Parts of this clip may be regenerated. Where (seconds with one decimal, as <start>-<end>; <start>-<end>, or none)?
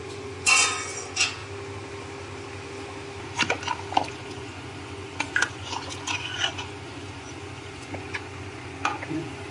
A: 0.0-1.4; 4.1-9.5